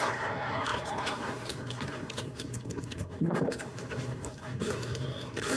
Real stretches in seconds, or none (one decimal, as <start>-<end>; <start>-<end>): none